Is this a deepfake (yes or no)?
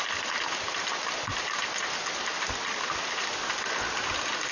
no